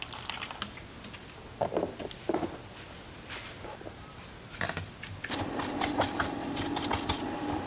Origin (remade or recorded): recorded